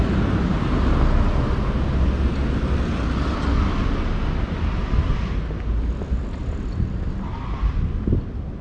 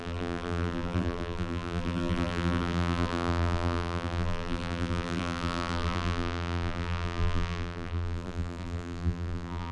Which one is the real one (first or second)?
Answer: first